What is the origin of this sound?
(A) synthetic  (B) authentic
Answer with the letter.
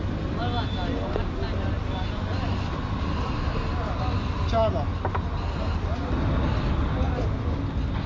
B